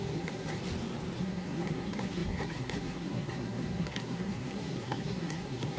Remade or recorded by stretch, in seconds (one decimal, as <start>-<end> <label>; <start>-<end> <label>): 0.0-0.6 remade; 0.6-1.2 recorded; 1.2-5.8 remade